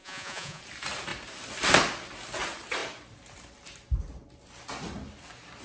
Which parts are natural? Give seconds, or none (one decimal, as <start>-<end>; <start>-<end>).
0.6-5.6